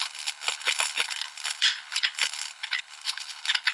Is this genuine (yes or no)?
no